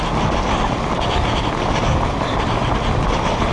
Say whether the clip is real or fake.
real